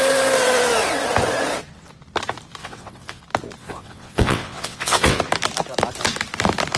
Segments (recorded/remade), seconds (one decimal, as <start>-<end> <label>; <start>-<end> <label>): 0.0-2.6 recorded; 2.6-3.2 remade; 3.2-3.6 recorded; 3.6-5.2 remade; 5.2-6.8 recorded